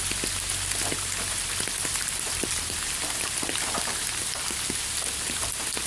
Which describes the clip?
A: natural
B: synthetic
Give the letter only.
A